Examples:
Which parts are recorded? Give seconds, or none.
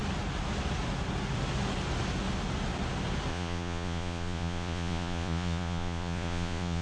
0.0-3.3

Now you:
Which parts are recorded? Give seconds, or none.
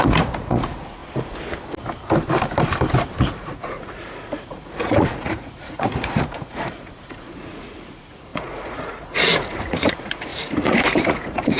1.0-3.2